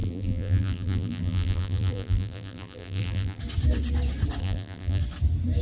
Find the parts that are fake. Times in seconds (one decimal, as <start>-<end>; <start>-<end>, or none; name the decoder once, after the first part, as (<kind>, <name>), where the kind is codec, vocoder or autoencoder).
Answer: 0.0-3.4 (vocoder, BigVGAN v2); 4.4-5.0